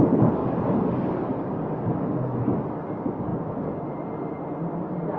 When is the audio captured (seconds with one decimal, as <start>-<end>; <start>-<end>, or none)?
0.0-0.4; 2.5-5.2